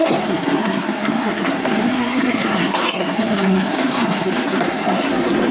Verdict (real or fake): fake